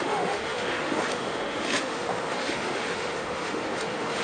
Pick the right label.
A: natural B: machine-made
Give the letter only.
B